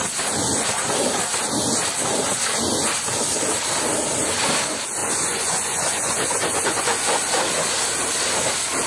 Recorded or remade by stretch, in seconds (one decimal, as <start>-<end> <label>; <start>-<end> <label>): 0.0-5.0 recorded; 5.0-7.4 remade; 7.4-8.9 recorded